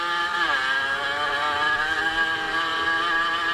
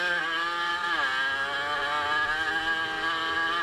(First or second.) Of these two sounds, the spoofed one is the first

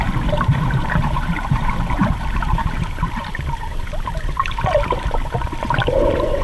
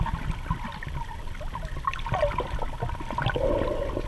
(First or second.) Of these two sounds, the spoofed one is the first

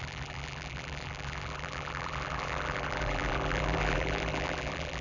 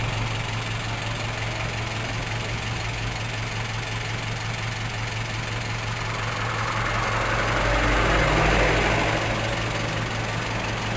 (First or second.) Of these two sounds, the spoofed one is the first